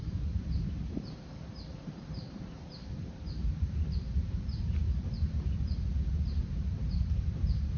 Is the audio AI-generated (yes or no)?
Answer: yes